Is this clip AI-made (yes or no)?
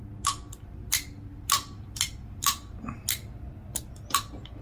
no